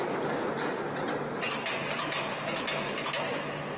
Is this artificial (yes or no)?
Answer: no